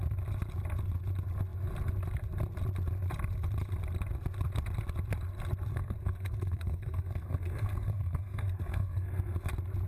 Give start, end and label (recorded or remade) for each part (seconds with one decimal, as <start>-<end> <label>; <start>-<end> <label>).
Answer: 0.0-5.7 recorded; 5.7-9.5 remade; 9.5-9.9 recorded